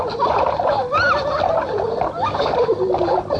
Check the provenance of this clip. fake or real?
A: real